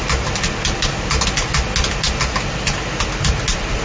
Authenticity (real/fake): real